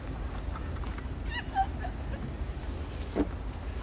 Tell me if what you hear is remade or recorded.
recorded